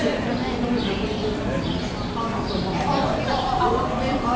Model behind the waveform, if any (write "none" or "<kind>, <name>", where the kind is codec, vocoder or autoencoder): none